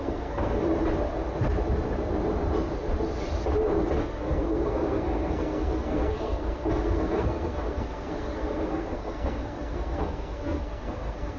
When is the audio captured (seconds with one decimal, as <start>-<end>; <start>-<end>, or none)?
0.6-4.0